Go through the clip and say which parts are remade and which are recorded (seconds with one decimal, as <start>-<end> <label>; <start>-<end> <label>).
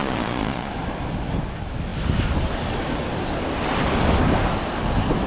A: 0.0-0.7 remade; 0.7-5.3 recorded